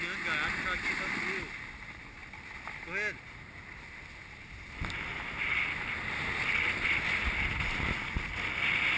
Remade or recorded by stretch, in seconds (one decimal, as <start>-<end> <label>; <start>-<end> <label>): 0.0-9.0 recorded

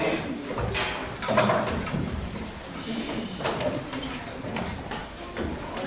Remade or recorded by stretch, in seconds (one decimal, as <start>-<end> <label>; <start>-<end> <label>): 0.0-1.0 recorded; 1.0-3.8 remade; 3.8-5.9 recorded

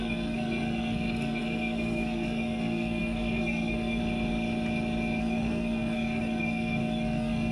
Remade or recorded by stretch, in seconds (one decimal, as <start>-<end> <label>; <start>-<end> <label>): 0.0-4.0 remade; 4.0-5.2 recorded; 5.2-7.5 remade

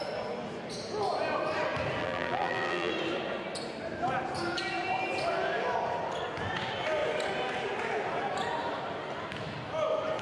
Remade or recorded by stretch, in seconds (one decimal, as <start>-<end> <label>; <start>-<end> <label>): 0.0-2.0 recorded; 2.0-2.9 remade; 2.9-10.2 recorded

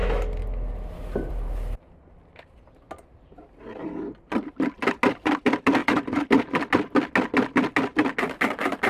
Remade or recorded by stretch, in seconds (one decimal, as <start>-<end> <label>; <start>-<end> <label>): 0.0-5.8 recorded; 5.8-6.6 remade; 6.6-8.9 recorded

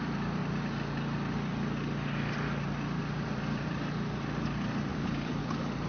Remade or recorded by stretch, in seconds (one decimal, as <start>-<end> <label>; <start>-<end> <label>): 0.0-0.4 remade; 0.4-3.0 recorded; 3.0-5.9 remade